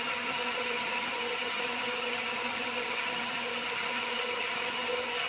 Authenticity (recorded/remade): remade